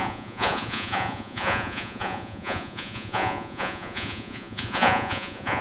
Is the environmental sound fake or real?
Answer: fake